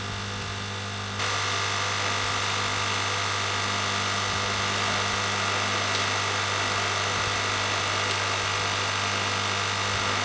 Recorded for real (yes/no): yes